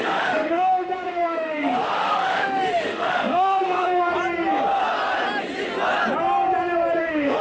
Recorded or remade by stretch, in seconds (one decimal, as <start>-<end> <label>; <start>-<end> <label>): 0.0-4.1 remade; 4.1-7.0 recorded; 7.0-7.4 remade